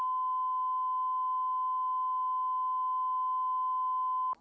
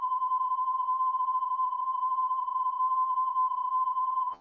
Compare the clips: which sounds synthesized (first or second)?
second